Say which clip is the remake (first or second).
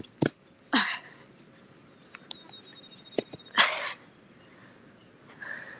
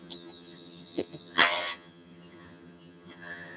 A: second